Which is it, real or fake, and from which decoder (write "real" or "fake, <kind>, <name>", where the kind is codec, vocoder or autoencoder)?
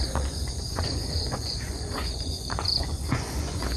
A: fake, vocoder, Vocos